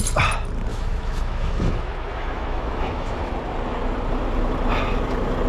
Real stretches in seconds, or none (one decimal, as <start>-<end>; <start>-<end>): 0.0-0.7; 3.3-5.5